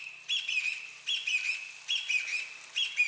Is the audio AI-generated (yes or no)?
no